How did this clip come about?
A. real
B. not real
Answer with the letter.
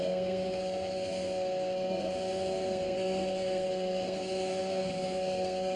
B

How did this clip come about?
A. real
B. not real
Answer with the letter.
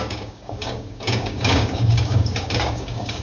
B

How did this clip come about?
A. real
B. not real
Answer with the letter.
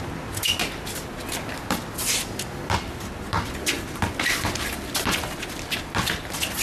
A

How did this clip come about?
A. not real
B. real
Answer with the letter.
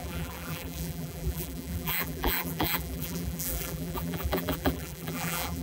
A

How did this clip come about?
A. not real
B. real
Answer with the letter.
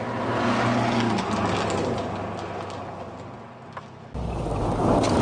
B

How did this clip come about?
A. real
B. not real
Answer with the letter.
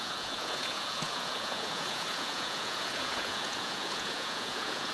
B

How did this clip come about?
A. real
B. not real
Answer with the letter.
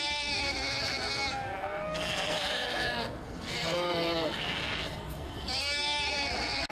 B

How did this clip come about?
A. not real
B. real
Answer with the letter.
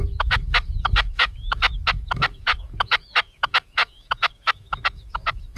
A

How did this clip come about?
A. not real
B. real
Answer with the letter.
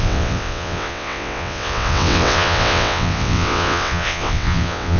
A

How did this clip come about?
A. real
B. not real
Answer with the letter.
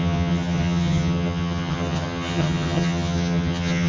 B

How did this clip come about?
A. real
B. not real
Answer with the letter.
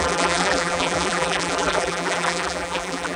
B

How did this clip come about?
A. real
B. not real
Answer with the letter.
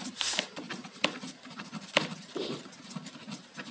A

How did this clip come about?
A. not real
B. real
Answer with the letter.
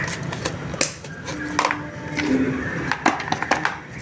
B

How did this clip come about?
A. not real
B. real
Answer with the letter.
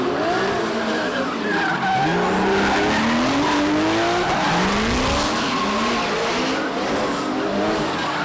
B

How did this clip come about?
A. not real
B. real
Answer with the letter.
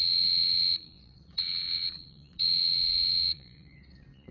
A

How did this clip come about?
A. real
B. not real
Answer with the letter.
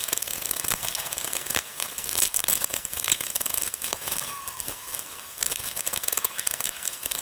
B